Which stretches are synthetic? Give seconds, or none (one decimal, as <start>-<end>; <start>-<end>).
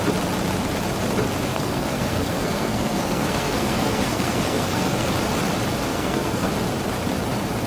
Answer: 1.5-5.1; 5.9-6.5